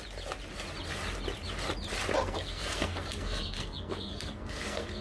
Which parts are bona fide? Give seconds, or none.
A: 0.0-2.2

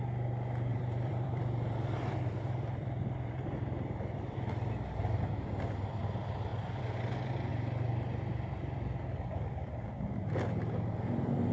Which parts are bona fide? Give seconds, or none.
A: 0.0-0.7; 4.7-11.5

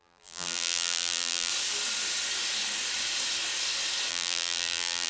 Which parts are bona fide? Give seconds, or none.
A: 1.5-4.1

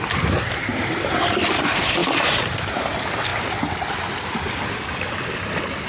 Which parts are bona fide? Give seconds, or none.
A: 0.0-0.7; 1.2-5.9

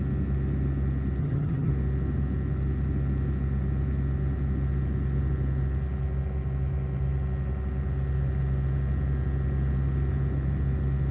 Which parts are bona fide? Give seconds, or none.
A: 0.0-1.2; 1.7-11.1